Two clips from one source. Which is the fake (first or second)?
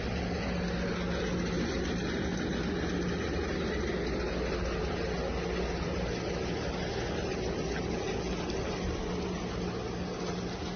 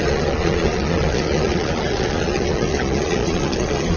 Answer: second